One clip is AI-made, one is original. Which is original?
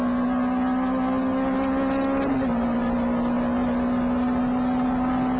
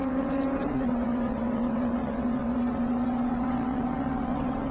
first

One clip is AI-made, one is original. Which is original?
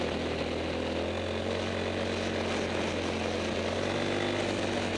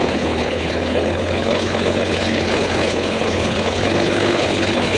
first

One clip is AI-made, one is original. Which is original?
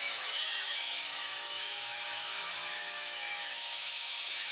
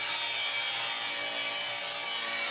second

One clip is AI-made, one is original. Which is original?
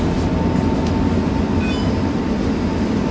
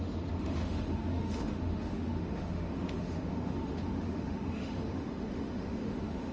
first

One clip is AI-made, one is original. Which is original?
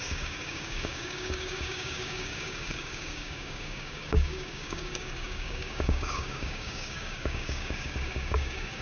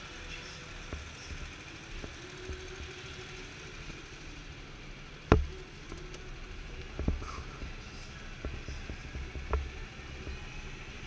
second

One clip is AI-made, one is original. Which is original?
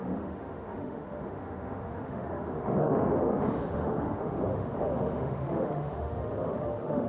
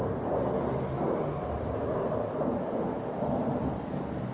second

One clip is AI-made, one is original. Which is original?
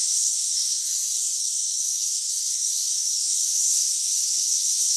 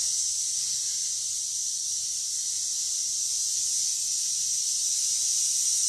second